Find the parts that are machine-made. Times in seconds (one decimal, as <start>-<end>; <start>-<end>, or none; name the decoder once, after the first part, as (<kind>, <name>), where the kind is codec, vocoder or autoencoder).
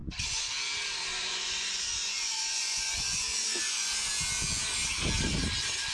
0.0-0.5 (vocoder, Vocos); 1.1-4.1